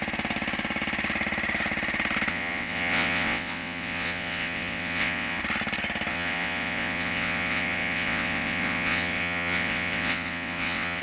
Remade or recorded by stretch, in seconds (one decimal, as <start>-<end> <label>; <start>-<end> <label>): 0.0-2.3 recorded; 2.3-5.4 remade; 5.4-6.1 recorded; 6.1-11.0 remade